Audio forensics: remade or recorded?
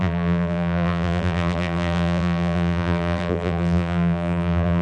remade